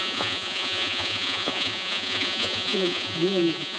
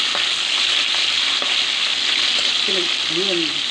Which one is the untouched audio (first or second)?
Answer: second